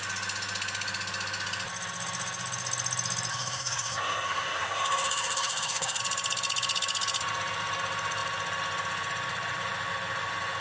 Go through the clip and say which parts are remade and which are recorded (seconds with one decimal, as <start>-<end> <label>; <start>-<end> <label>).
0.0-3.3 recorded; 3.3-6.0 remade; 6.0-10.6 recorded